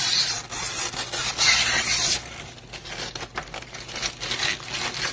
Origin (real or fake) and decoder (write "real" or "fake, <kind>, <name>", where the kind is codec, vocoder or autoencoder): real